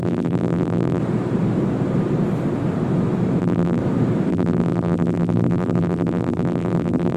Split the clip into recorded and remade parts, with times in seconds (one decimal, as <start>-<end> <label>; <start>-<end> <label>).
0.0-1.0 remade; 1.0-3.4 recorded; 3.4-3.8 remade; 3.8-4.3 recorded; 4.3-7.2 remade